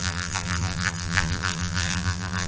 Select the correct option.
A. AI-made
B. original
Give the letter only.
A